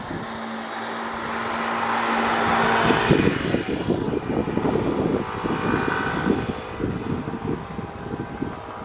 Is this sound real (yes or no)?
yes